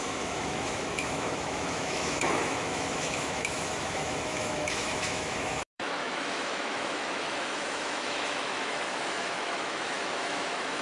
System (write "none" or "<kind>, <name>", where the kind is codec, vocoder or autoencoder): autoencoder, DAC-VAE